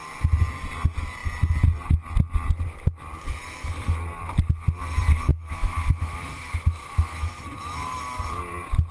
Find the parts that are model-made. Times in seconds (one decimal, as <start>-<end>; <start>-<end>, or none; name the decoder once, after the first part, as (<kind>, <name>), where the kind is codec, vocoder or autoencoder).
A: 5.3-8.2 (autoencoder, DAC-VAE)